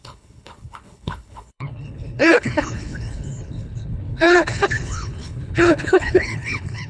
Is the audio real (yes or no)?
no